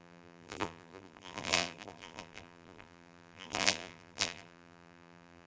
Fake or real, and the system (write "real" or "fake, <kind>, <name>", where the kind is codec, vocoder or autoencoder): fake, vocoder, BigVGAN v2